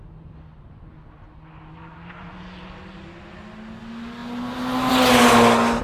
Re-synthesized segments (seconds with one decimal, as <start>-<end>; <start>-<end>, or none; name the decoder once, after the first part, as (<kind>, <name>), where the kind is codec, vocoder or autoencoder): none

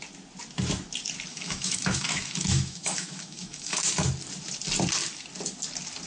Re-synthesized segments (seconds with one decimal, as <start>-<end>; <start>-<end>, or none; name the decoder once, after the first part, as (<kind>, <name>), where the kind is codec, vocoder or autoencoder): 1.3-3.8 (autoencoder, DAC-VAE)

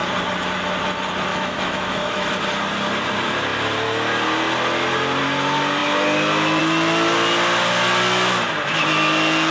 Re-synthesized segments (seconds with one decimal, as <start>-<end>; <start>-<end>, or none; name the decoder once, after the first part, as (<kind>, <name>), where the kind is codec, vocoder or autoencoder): 1.3-2.4 (autoencoder, DAC-VAE)